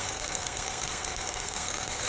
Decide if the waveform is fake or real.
fake